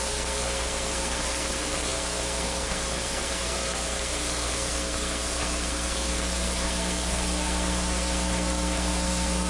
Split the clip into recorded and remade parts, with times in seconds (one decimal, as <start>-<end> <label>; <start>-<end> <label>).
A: 0.0-9.5 remade